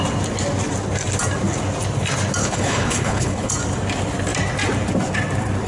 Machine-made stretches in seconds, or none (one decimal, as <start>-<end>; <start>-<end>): 2.4-3.5